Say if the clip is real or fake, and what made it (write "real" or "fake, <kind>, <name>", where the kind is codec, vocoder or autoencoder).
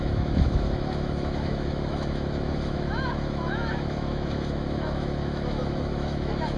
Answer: fake, autoencoder, DAC-VAE